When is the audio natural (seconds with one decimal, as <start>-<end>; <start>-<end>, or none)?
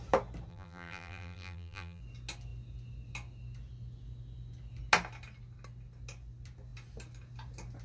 0.0-0.5; 2.0-7.8